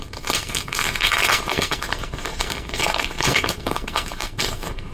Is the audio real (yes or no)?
no